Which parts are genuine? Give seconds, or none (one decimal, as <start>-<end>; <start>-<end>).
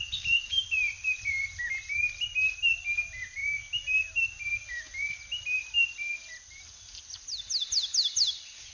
0.0-0.5; 1.6-8.7